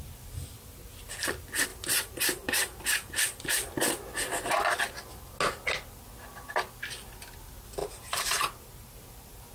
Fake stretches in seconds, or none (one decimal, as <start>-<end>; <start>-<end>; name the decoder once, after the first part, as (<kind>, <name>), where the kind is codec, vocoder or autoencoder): 1.7-3.1 (vocoder, BigVGAN v2); 7.8-9.5